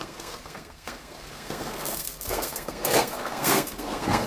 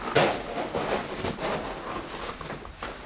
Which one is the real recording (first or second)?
second